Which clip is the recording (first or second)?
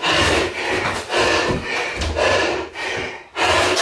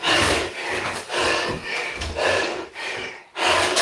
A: first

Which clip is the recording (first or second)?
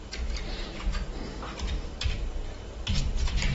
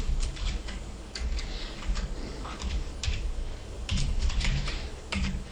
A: first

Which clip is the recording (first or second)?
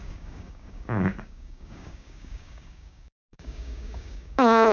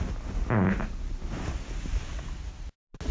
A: second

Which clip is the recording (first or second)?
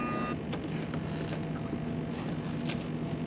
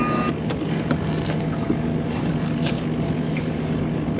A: first